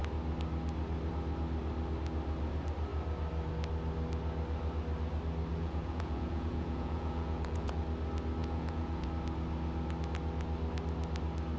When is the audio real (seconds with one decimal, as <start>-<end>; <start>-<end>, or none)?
0.0-5.5; 7.8-8.4; 9.1-11.6